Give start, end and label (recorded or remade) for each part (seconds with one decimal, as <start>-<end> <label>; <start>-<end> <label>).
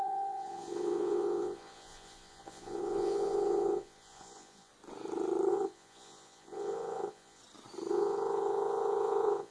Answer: 0.0-4.7 remade; 4.7-5.5 recorded; 5.5-7.4 remade; 7.4-7.9 recorded; 7.9-9.5 remade